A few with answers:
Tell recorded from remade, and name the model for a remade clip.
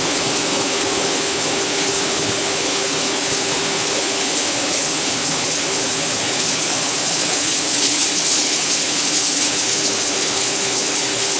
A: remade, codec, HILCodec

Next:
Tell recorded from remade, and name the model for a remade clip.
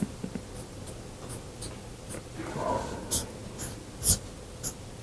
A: recorded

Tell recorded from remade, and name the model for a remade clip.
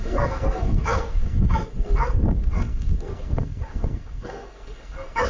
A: remade, codec, SNAC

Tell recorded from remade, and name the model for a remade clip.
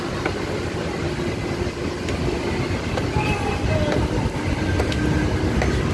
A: recorded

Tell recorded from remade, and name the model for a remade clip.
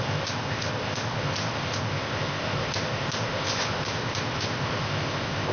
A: remade, codec, ZipCodec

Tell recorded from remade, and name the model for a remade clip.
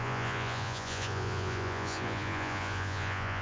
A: remade, vocoder, Vocos